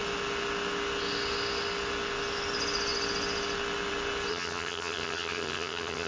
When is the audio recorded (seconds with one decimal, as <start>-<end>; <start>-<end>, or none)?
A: 0.0-4.3